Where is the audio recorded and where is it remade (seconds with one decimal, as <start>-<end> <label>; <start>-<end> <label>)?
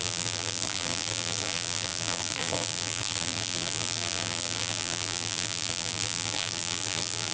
0.0-7.3 remade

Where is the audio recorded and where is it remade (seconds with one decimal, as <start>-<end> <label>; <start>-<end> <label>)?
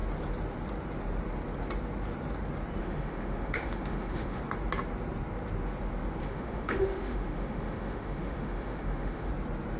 0.0-2.8 recorded; 2.8-4.4 remade; 4.4-6.2 recorded; 6.2-9.3 remade; 9.3-9.8 recorded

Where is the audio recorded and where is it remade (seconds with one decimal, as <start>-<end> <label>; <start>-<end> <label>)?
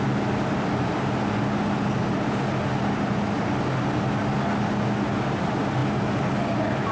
0.0-6.9 recorded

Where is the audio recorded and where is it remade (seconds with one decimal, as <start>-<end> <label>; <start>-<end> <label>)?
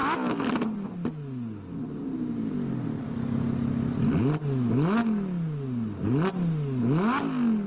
0.0-7.7 recorded